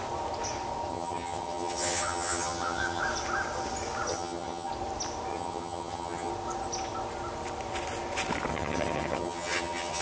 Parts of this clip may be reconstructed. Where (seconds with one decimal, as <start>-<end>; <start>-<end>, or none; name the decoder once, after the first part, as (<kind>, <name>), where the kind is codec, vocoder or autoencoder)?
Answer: 0.9-3.0 (vocoder, HiFi-GAN); 4.1-4.7; 5.3-6.3; 8.5-10.0